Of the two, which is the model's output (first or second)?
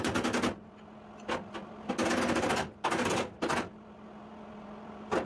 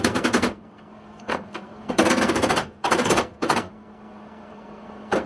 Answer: second